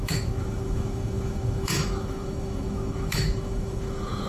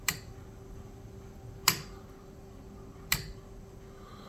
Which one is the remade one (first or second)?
first